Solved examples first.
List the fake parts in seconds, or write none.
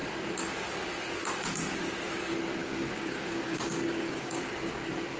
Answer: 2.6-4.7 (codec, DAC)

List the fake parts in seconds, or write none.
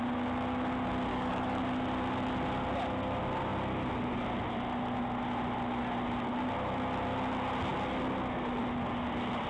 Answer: 1.1-1.6 (codec, DAC)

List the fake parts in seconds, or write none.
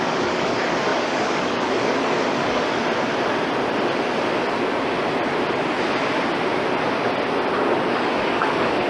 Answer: 0.0-2.8 (codec, DAC); 7.9-8.9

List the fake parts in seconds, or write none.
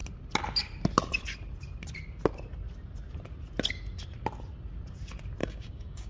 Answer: 5.4-6.1 (codec, DAC)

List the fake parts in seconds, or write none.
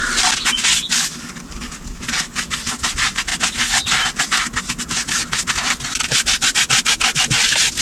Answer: 0.9-2.6 (codec, DAC)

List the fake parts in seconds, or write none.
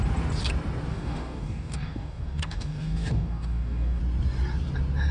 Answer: 0.9-4.0 (codec, DAC)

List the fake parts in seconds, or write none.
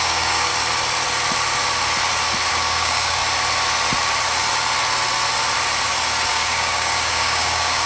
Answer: 0.0-0.5 (codec, DAC); 2.5-3.2; 6.3-7.9